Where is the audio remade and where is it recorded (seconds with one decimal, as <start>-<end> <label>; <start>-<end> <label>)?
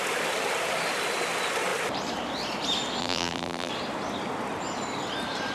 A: 0.0-3.0 recorded; 3.0-3.7 remade; 3.7-5.5 recorded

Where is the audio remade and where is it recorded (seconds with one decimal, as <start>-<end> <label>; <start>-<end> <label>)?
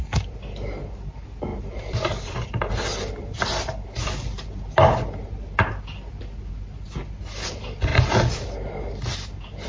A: 0.0-9.7 recorded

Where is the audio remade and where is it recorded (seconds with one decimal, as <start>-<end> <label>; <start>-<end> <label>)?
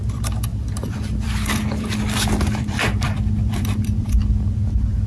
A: 0.0-4.2 remade; 4.2-5.1 recorded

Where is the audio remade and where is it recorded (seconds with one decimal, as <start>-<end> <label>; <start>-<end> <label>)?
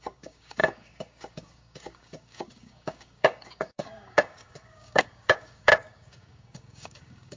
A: 0.0-7.4 remade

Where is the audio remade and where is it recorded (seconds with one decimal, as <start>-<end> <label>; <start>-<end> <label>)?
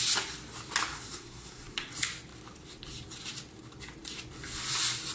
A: 0.0-0.9 recorded; 0.9-1.9 remade; 1.9-5.1 recorded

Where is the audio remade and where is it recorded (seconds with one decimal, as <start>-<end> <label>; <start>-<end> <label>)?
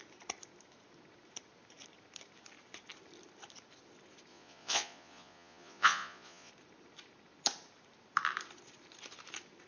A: 0.0-4.3 recorded; 4.3-6.5 remade; 6.5-9.7 recorded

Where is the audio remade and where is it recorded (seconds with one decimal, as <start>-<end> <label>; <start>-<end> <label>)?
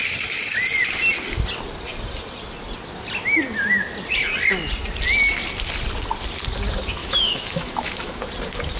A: 0.0-7.0 recorded; 7.0-8.3 remade; 8.3-8.8 recorded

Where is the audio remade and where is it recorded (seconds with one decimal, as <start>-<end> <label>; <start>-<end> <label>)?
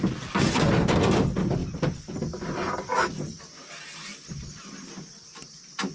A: 0.0-5.9 recorded